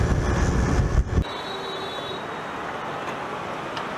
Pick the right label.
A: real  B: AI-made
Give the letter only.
A